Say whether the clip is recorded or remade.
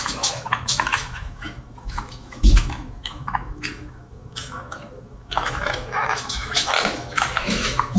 remade